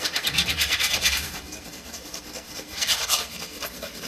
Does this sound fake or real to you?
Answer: fake